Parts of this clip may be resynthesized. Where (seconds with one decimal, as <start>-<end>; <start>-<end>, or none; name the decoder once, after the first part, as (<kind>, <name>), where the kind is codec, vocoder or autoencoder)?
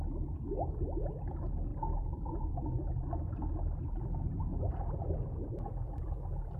1.7-3.1 (vocoder, BigVGAN v2)